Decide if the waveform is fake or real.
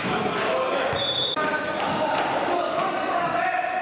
real